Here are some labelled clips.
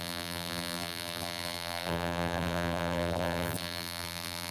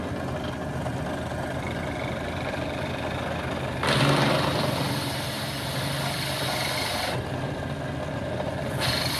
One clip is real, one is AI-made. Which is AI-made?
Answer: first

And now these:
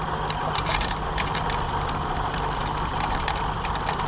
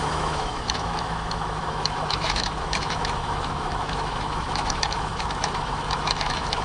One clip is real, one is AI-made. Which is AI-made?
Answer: second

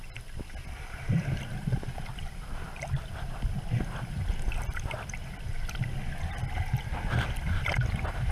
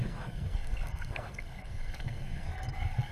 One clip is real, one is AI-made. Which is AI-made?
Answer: second